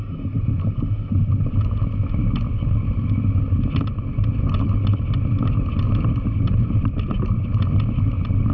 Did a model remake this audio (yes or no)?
no